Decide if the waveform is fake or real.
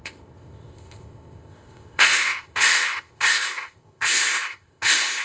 fake